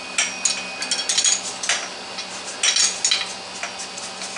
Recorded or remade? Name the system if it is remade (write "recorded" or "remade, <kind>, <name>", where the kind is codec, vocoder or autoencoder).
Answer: recorded